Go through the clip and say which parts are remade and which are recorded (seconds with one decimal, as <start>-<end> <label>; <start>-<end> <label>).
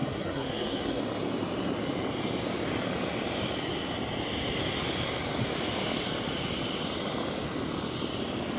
0.0-1.0 remade; 1.0-8.6 recorded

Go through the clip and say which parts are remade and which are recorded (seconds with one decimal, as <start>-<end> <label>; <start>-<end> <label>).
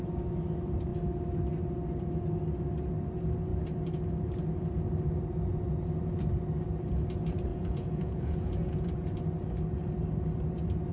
0.0-7.5 recorded; 7.5-8.9 remade; 8.9-10.9 recorded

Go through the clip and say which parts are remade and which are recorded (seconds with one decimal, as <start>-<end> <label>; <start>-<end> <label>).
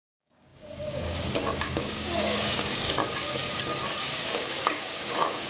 0.0-3.4 remade; 3.4-4.1 recorded; 4.1-5.5 remade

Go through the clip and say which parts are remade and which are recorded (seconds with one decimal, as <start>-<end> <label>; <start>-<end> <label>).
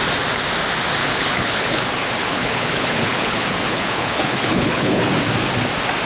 0.0-1.0 recorded; 1.0-1.8 remade; 1.8-2.2 recorded; 2.2-5.1 remade; 5.1-6.1 recorded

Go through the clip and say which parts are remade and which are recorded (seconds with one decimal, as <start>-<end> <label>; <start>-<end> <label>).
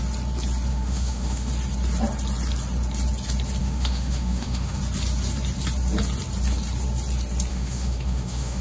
0.0-0.7 recorded; 0.7-1.5 remade; 1.5-3.6 recorded; 3.6-4.8 remade; 4.8-7.5 recorded; 7.5-8.6 remade